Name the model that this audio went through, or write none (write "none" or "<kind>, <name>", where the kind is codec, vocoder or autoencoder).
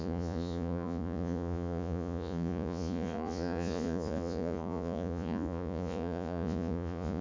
vocoder, Vocos